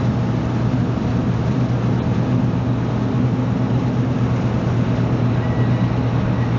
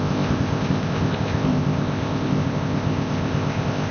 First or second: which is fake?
second